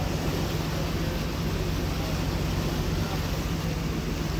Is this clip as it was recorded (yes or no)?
yes